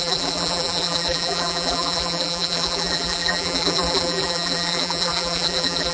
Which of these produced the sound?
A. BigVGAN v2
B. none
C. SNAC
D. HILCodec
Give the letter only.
A